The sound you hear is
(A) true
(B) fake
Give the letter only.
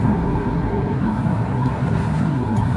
B